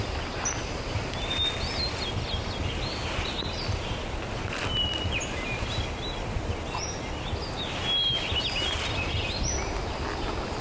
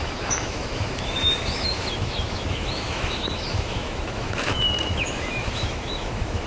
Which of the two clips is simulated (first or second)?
second